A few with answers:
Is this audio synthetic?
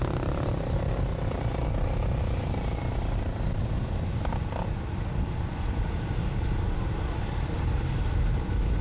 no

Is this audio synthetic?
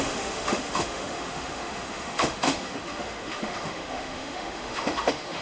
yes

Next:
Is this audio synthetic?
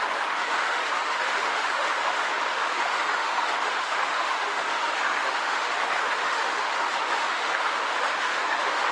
yes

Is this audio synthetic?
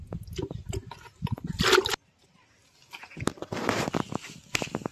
no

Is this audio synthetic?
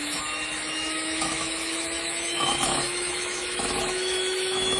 yes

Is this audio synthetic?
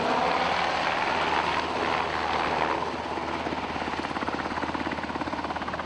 no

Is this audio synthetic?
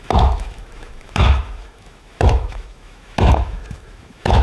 yes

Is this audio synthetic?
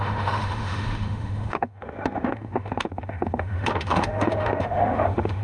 yes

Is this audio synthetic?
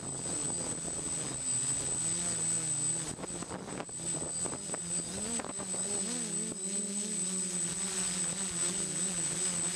no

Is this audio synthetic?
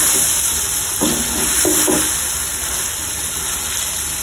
no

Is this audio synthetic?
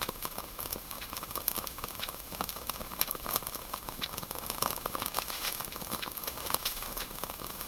yes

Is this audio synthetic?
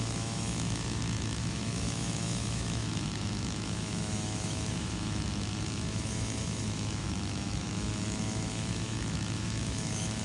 yes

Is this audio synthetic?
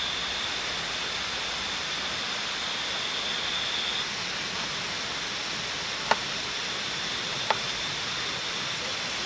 no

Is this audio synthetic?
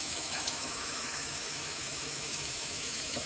yes